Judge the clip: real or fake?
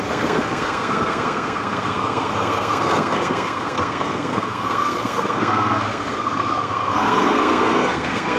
fake